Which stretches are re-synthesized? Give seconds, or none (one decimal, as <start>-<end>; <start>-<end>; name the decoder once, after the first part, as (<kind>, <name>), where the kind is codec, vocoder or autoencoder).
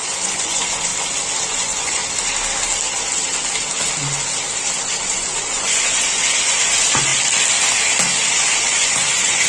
0.0-0.9 (vocoder, Vocos); 1.5-2.0; 4.8-7.1; 8.3-9.5